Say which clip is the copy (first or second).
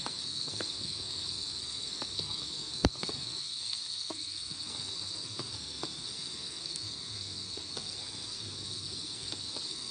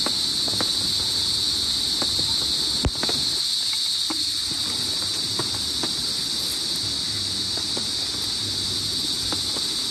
first